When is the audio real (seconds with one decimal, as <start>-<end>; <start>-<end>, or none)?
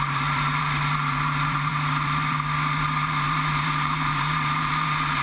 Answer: none